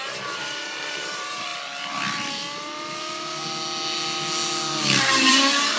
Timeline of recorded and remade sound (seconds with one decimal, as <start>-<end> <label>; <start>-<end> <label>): 0.0-1.5 remade; 1.5-5.0 recorded; 5.0-5.8 remade